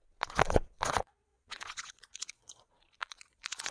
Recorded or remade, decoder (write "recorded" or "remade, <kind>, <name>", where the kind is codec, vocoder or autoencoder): remade, vocoder, Vocos